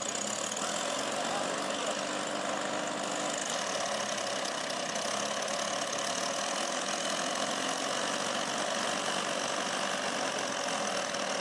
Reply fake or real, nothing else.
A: real